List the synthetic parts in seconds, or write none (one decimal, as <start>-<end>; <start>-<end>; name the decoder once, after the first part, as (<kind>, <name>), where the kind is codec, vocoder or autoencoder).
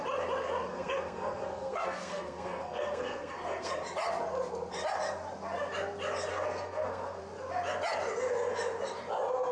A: 0.7-3.7 (codec, SNAC); 6.3-7.2